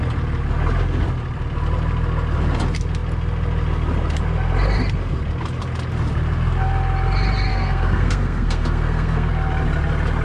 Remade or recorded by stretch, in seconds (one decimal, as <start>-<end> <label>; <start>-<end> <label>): 0.0-7.5 recorded; 7.5-9.3 remade; 9.3-10.2 recorded